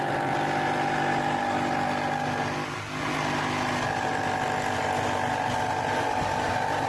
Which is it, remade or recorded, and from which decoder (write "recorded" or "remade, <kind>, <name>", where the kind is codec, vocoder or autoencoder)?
recorded